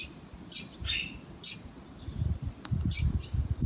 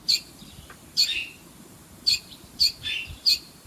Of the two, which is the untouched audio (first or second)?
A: first